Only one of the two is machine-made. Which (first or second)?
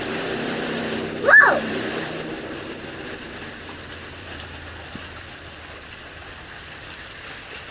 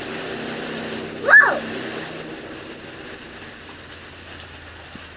first